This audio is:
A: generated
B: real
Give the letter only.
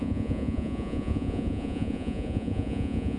A